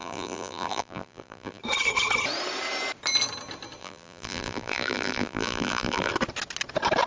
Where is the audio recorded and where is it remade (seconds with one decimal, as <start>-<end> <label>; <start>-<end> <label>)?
0.0-1.6 remade; 1.6-3.8 recorded; 3.8-6.1 remade; 6.1-7.1 recorded